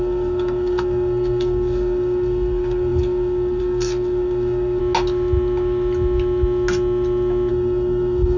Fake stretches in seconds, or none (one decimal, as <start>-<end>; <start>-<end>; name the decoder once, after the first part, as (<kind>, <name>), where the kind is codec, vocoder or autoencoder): 0.0-4.8 (codec, SNAC); 7.5-8.4